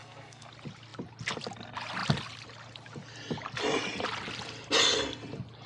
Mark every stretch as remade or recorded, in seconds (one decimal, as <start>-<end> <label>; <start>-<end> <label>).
0.0-0.5 remade; 0.5-5.7 recorded